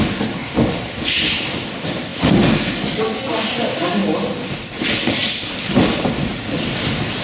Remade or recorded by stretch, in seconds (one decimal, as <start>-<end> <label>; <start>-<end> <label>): 0.0-5.2 recorded; 5.2-6.3 remade; 6.3-7.2 recorded